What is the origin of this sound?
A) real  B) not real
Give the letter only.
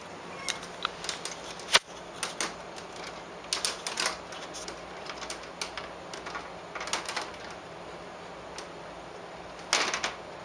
A